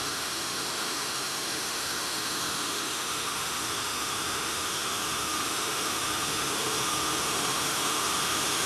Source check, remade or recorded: remade